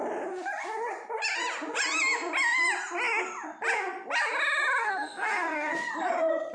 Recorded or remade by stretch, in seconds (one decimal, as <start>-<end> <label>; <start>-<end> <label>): 0.0-4.8 recorded; 4.8-5.7 remade; 5.7-6.5 recorded